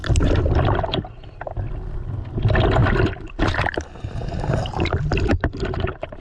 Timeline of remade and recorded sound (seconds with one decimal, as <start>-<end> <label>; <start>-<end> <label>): 0.0-6.2 recorded